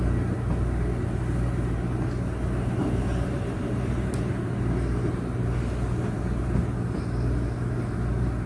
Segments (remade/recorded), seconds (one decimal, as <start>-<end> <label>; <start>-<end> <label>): 0.0-2.8 recorded; 2.8-4.4 remade; 4.4-8.5 recorded